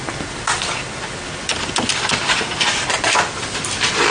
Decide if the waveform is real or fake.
fake